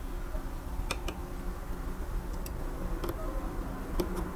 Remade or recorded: recorded